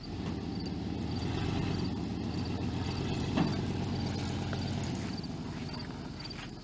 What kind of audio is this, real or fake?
real